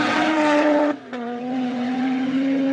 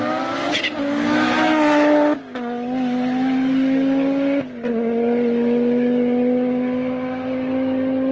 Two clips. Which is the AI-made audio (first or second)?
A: first